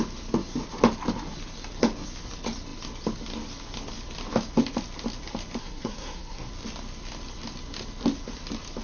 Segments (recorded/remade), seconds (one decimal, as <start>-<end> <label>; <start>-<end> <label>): 0.0-5.6 recorded; 5.6-6.5 remade; 6.5-8.8 recorded